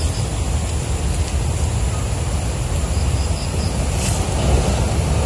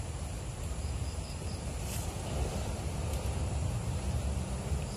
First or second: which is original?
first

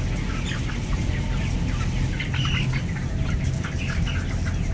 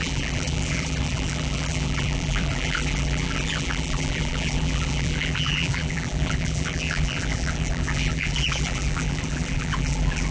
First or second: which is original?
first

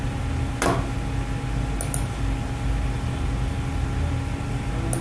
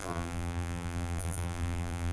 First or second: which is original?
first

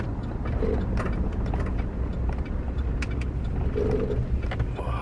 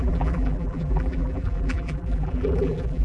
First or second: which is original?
first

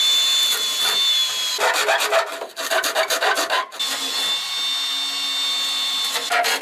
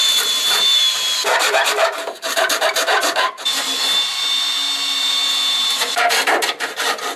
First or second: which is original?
first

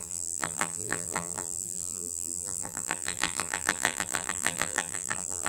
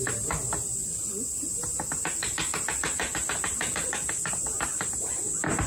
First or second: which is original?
second